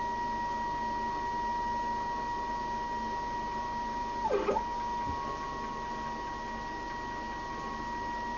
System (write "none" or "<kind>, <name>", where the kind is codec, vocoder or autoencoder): none